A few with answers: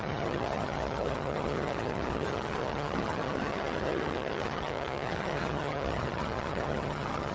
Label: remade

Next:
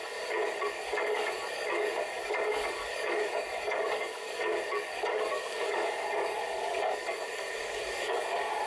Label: remade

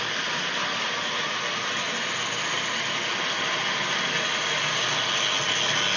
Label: recorded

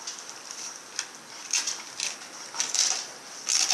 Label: recorded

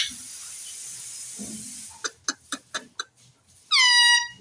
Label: recorded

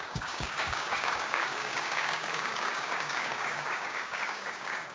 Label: remade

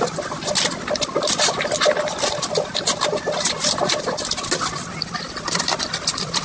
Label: recorded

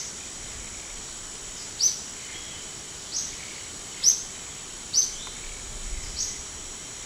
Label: recorded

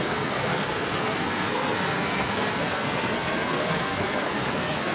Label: remade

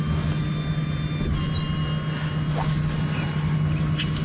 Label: recorded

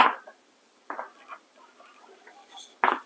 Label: recorded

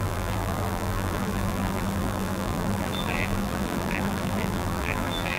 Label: remade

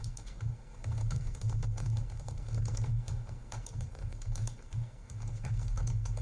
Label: remade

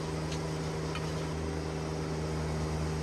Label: recorded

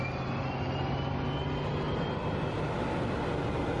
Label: recorded